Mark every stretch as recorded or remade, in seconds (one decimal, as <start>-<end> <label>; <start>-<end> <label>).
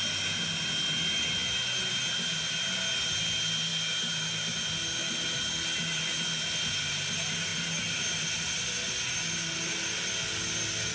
0.0-10.9 recorded